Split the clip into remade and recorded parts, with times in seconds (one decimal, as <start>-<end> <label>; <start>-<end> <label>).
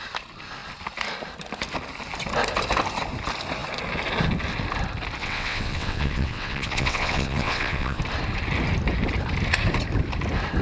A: 0.0-5.2 recorded; 5.2-8.0 remade; 8.0-10.6 recorded